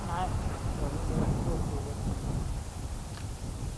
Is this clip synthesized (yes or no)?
no